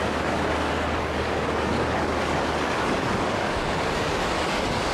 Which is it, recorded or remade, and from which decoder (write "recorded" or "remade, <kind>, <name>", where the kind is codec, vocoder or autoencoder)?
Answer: remade, codec, DAC